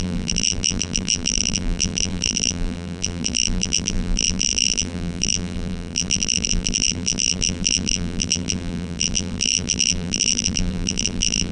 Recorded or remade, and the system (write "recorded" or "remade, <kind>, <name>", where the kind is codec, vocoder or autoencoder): remade, vocoder, BigVGAN v2